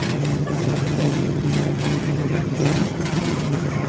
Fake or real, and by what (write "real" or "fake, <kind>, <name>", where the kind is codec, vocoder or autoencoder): fake, vocoder, HiFi-GAN